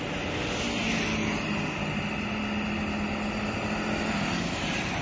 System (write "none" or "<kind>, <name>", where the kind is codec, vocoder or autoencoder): none